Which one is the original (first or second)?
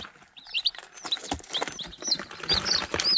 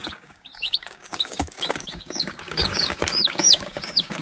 first